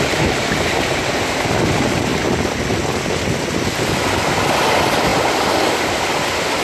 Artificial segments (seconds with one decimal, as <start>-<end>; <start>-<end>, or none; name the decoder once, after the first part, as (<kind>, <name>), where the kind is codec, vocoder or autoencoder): none